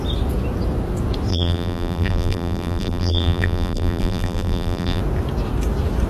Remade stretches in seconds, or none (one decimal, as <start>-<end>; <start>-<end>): 1.3-5.0